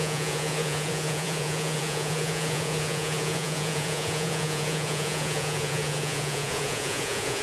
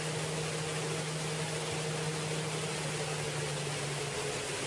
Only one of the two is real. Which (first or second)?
second